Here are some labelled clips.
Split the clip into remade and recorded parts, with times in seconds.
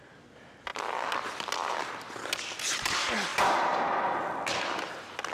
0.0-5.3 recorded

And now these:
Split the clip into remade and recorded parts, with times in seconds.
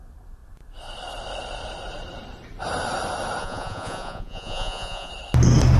0.0-3.4 recorded; 3.4-5.1 remade; 5.1-5.8 recorded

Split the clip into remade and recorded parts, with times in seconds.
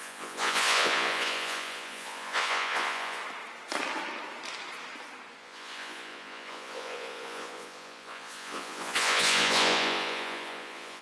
0.0-3.2 remade; 3.2-5.4 recorded; 5.4-11.0 remade